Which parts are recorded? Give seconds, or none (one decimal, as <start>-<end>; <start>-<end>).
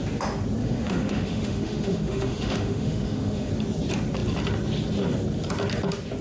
0.0-0.6; 3.5-6.2